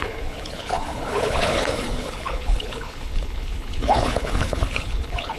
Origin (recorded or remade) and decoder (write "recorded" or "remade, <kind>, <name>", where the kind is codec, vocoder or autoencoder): remade, codec, HILCodec